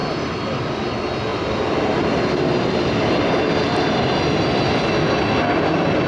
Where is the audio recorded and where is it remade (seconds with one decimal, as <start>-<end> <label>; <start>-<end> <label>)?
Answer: 0.0-1.3 recorded; 1.3-4.6 remade; 4.6-6.1 recorded